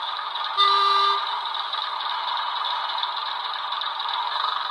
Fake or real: fake